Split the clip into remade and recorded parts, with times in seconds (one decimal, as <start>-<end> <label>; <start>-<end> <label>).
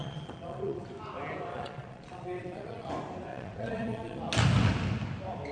0.0-0.8 remade; 0.8-1.5 recorded; 1.5-2.9 remade; 2.9-3.3 recorded; 3.3-4.2 remade; 4.2-5.5 recorded